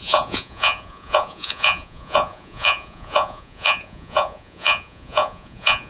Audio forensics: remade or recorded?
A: remade